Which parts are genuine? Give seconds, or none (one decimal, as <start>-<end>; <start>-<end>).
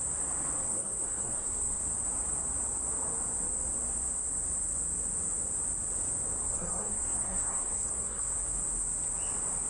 0.0-0.6; 1.8-6.4; 8.3-9.7